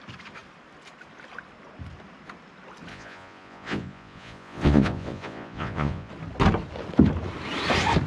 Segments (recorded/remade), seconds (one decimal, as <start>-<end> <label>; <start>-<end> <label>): 0.0-2.9 recorded; 2.9-6.1 remade; 6.1-8.1 recorded